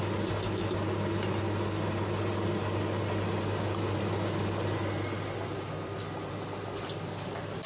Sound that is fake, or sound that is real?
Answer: real